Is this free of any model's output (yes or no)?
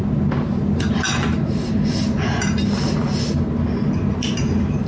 yes